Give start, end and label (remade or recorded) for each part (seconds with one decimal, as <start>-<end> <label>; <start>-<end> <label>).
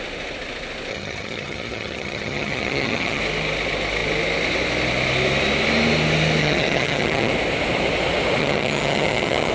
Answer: 0.0-0.9 recorded; 0.9-3.2 remade; 3.2-6.4 recorded; 6.4-7.3 remade; 7.3-8.4 recorded; 8.4-9.5 remade